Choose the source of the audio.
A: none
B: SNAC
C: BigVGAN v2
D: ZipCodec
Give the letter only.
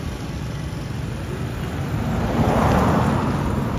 A